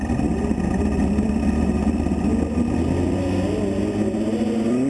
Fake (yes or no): no